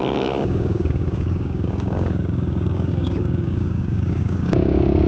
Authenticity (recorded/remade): remade